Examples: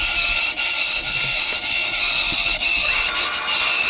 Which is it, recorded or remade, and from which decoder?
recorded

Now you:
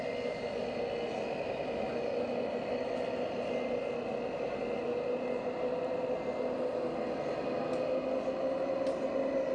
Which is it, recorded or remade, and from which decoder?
recorded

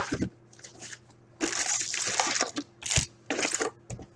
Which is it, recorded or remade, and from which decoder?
recorded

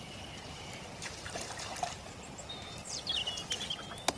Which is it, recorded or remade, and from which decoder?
recorded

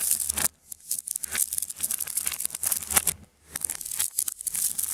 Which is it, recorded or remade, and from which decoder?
recorded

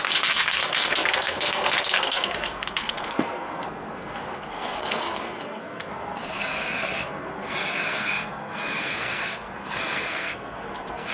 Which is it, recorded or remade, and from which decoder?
remade, codec, SNAC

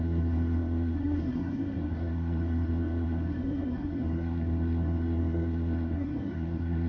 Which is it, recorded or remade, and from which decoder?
remade, codec, SNAC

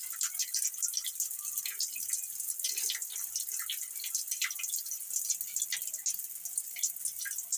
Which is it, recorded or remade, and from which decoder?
recorded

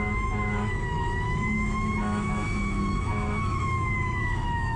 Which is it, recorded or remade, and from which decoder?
remade, autoencoder, DAC-VAE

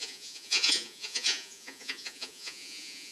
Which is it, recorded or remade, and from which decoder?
remade, vocoder, Vocos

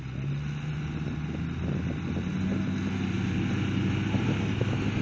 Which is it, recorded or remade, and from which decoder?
recorded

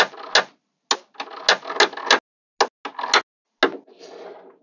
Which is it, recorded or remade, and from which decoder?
recorded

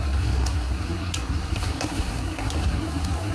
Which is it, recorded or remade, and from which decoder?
remade, codec, SNAC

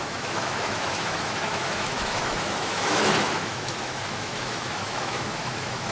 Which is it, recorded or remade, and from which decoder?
remade, autoencoder, DAC-VAE